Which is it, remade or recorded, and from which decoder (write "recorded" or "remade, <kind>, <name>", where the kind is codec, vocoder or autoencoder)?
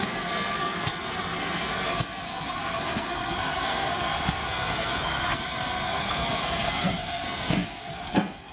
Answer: remade, codec, SNAC